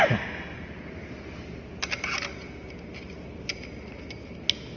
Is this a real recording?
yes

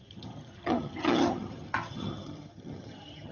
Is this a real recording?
no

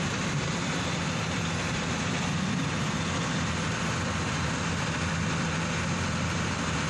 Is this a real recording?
no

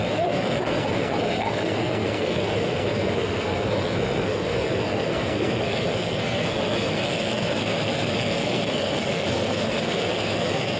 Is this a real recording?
no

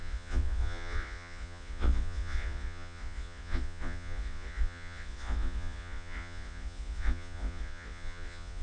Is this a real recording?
no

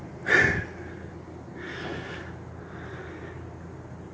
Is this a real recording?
yes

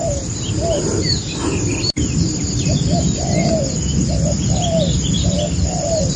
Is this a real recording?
no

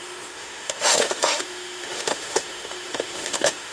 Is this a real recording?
no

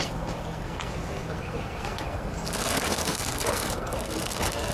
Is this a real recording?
no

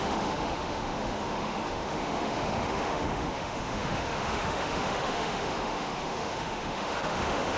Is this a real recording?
no